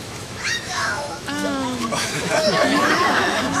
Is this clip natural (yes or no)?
no